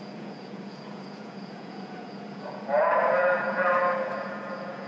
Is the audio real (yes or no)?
no